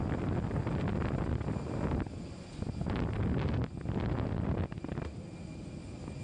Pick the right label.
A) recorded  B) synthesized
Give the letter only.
A